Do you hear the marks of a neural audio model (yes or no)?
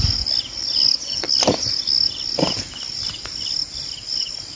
no